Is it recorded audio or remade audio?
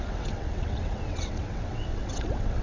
remade